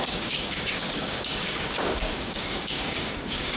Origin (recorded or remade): remade